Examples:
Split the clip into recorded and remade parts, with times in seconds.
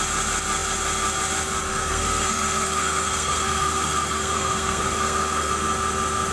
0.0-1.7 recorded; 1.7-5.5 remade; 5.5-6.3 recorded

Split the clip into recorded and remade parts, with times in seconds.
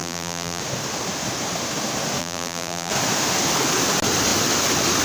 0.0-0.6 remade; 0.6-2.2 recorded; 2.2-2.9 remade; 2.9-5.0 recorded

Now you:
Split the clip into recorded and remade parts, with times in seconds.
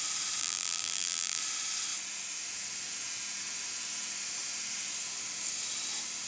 0.0-0.4 recorded; 0.4-1.4 remade; 1.4-6.3 recorded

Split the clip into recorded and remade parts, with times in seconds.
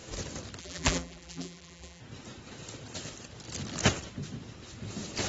0.0-0.6 recorded; 0.6-2.0 remade; 2.0-5.3 recorded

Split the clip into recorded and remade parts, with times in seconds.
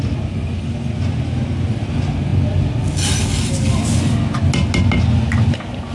0.0-5.9 recorded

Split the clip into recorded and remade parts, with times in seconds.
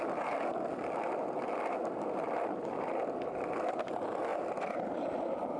0.0-4.3 recorded; 4.3-5.1 remade; 5.1-5.6 recorded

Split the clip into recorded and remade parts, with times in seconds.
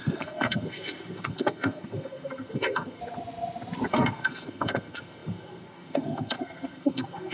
0.0-3.0 remade; 3.0-3.9 recorded; 3.9-7.3 remade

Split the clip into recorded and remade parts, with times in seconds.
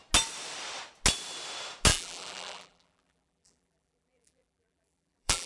0.0-1.9 recorded; 1.9-5.5 remade